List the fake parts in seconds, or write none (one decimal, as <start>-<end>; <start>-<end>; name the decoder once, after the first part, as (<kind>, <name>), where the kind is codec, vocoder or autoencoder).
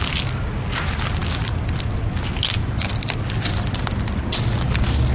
none